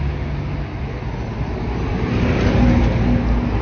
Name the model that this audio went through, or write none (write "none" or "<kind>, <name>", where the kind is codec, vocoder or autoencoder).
none